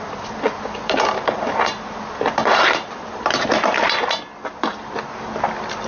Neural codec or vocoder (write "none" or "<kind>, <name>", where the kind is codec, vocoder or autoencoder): vocoder, BigVGAN v2